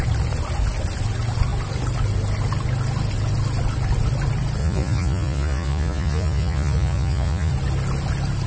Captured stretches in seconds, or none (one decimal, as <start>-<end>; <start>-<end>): 0.0-4.6; 7.5-8.5